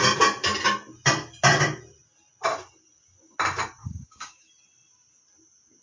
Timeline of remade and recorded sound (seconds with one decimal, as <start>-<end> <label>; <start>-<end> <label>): 0.0-3.8 recorded; 3.8-4.5 remade; 4.5-5.8 recorded